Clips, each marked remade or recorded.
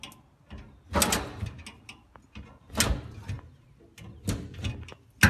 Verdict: recorded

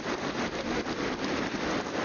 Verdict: recorded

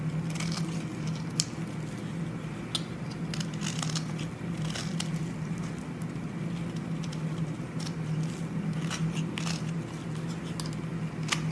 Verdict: recorded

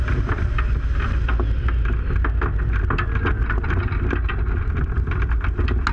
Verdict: recorded